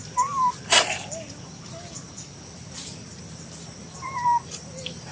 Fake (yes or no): no